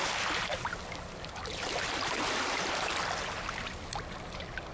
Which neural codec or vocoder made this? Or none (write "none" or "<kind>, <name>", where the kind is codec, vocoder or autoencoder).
none